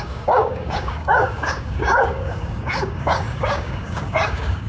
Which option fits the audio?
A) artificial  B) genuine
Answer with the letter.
A